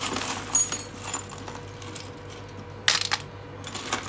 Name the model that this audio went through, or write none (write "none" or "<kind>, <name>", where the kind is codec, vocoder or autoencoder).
none